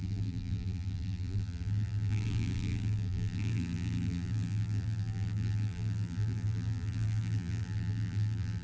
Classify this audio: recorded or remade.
remade